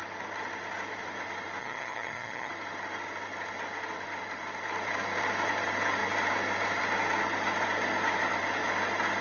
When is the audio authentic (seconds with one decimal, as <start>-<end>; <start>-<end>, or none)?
0.0-1.6; 2.5-9.2